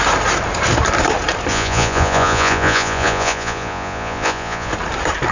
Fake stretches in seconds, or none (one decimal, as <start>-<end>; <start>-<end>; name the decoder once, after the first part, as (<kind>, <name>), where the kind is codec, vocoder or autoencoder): 1.5-4.7 (vocoder, Vocos)